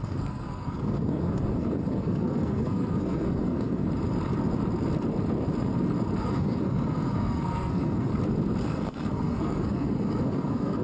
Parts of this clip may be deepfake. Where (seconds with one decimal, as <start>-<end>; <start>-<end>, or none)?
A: 0.0-3.8; 6.2-8.1; 8.6-10.8